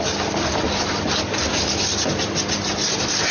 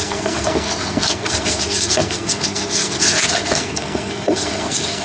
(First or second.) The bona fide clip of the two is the first